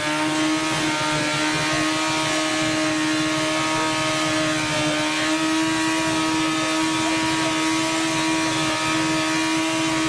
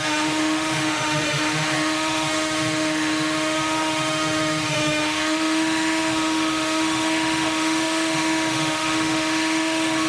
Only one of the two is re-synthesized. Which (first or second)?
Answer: second